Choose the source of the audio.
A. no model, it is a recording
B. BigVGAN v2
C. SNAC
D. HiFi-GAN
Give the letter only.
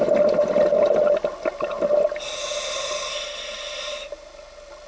A